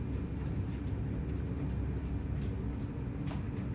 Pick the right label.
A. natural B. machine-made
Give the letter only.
A